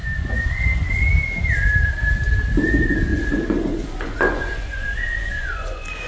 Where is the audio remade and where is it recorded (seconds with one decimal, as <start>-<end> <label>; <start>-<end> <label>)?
0.0-0.9 remade; 0.9-3.1 recorded; 3.1-6.1 remade